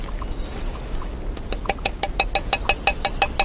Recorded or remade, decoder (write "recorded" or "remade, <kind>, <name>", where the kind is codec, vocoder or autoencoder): recorded